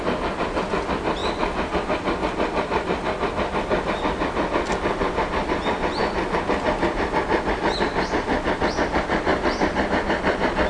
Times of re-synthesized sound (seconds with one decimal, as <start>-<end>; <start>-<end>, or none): none